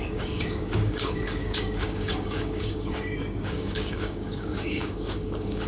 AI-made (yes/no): yes